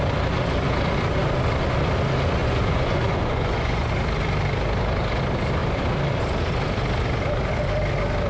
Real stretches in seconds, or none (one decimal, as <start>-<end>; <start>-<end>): 0.0-2.4; 3.9-8.3